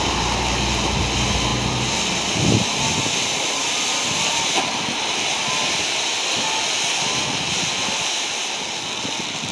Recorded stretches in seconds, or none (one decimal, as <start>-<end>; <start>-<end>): 0.0-9.5